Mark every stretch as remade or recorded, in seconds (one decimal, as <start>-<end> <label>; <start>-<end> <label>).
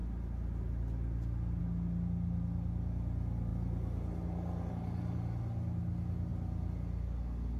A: 0.0-7.6 recorded